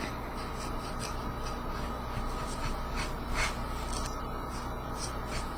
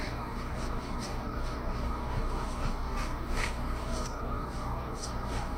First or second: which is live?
first